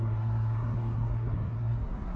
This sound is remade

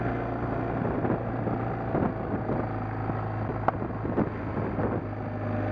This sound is recorded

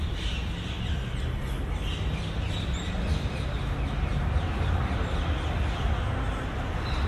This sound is recorded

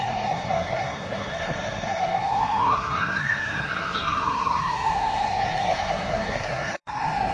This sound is remade